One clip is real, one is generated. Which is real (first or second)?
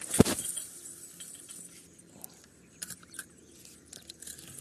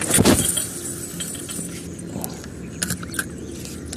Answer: second